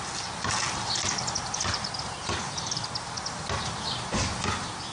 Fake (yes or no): no